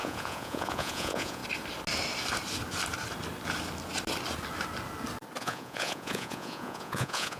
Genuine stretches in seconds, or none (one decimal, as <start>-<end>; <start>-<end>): 1.4-5.4